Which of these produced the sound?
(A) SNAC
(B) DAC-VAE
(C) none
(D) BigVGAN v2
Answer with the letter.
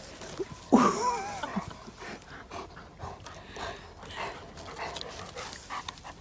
C